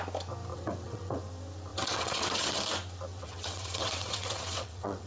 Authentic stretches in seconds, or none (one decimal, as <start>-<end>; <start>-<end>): 0.0-0.5; 1.2-1.7; 2.6-3.1